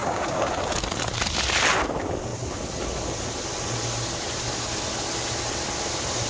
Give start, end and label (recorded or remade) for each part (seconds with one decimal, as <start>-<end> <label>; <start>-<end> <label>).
0.0-0.5 remade; 0.5-6.3 recorded